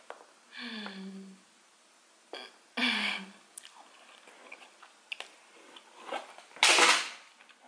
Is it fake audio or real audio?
real